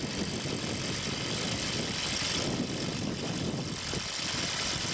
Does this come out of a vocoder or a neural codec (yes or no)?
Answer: no